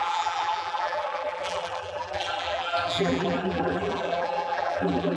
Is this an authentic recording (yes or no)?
no